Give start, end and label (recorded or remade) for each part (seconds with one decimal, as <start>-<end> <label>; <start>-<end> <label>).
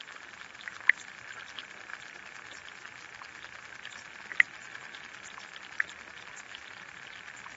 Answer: 0.0-7.6 recorded